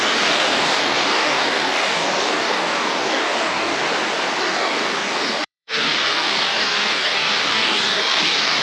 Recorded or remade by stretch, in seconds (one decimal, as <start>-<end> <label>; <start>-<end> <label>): 0.0-3.8 remade; 3.8-4.4 recorded; 4.4-8.6 remade